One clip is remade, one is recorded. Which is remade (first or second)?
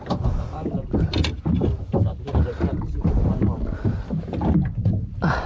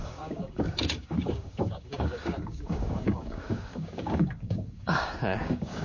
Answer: second